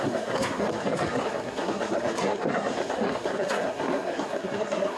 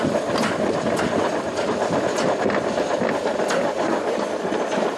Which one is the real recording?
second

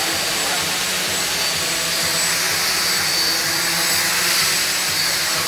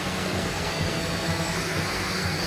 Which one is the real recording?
first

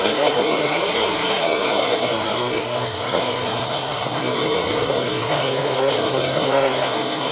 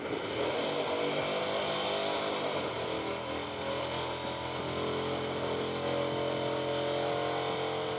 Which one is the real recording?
second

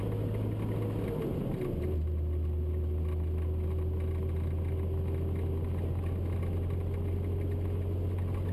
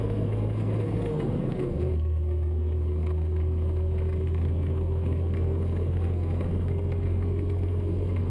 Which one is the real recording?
first